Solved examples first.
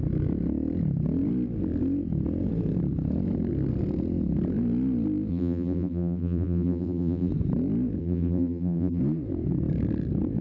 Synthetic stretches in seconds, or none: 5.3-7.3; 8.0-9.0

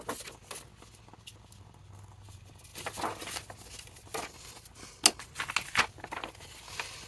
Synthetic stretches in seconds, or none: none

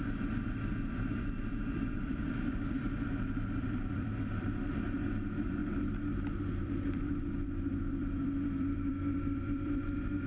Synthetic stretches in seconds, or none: 0.0-5.6; 6.4-10.3

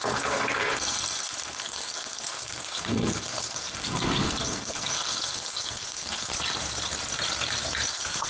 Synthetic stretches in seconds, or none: 0.0-6.3; 7.9-8.3

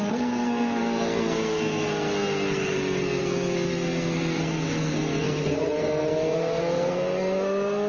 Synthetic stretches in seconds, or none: 0.0-7.9

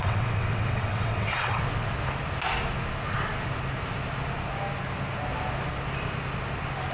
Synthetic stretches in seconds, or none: 0.0-1.6

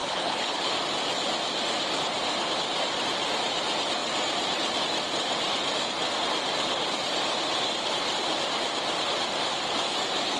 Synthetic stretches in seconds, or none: 0.0-0.7